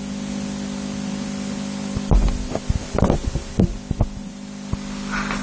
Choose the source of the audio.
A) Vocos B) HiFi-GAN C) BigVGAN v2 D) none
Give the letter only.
D